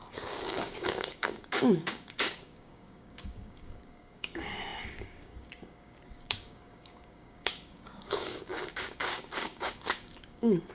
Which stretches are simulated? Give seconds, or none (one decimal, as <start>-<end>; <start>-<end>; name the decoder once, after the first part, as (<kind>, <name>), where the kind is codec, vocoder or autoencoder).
0.0-10.7 (codec, DAC)